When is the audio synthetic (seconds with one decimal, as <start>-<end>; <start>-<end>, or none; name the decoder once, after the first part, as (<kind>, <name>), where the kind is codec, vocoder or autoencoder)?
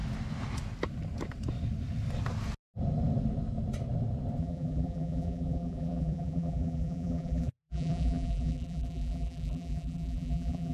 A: 4.4-10.7 (vocoder, BigVGAN v2)